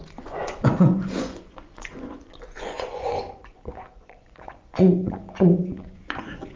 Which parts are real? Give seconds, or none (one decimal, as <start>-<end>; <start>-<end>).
none

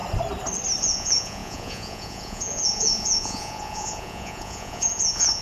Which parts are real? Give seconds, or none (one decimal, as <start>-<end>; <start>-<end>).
0.0-0.8